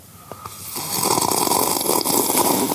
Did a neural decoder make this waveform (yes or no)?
no